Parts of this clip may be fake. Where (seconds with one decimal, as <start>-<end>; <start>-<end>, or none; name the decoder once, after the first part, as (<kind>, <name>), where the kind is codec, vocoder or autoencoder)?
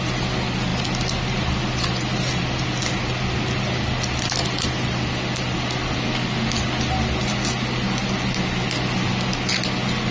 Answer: none